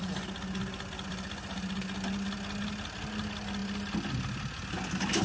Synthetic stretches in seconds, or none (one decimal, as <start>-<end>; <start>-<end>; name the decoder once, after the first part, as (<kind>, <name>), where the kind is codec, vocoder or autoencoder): none